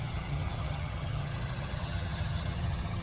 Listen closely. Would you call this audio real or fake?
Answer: fake